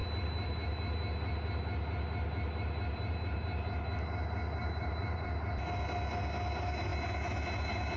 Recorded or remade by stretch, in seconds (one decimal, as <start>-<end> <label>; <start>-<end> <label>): 0.0-1.0 remade; 1.0-2.9 recorded; 2.9-3.7 remade; 3.7-4.6 recorded; 4.6-5.3 remade; 5.3-8.0 recorded